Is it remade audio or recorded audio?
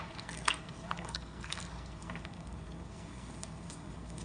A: remade